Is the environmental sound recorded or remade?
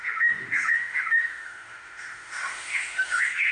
remade